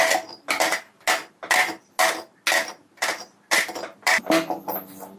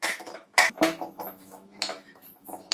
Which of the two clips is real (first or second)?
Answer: first